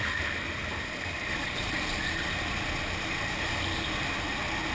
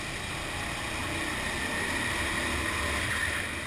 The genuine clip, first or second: second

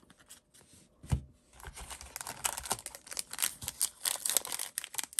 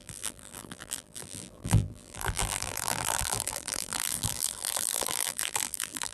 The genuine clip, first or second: first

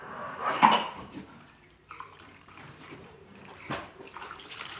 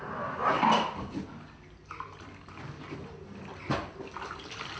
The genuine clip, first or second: second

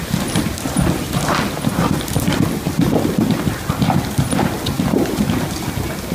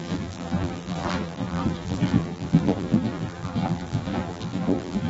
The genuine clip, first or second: first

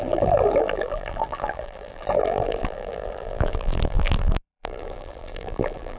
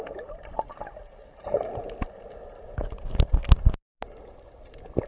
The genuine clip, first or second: second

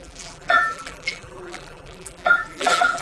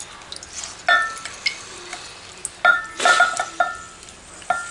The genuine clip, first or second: second